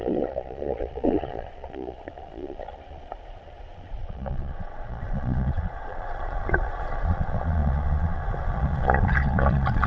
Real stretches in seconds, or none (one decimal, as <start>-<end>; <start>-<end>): none